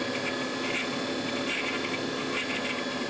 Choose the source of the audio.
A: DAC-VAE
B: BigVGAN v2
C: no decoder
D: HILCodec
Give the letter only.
C